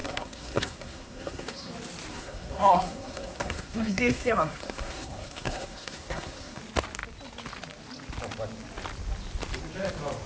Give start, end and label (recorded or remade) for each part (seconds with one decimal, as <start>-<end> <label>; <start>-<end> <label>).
0.0-1.7 remade; 1.7-2.1 recorded; 2.1-6.6 remade; 6.6-10.3 recorded